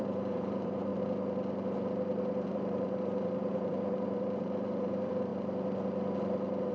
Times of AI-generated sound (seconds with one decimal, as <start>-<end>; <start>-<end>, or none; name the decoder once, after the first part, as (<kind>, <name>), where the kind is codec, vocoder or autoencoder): 0.0-0.9 (vocoder, BigVGAN v2); 2.5-5.3